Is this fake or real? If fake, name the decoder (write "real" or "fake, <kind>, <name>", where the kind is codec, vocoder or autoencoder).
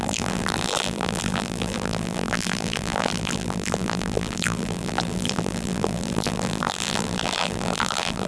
fake, vocoder, BigVGAN v2